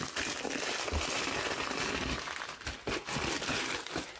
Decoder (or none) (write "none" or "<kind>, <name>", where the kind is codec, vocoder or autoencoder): none